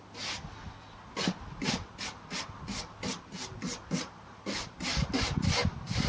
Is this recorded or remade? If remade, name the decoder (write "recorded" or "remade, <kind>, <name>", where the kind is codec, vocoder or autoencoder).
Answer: recorded